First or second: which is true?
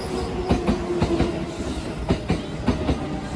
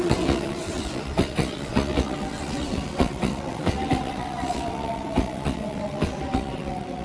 first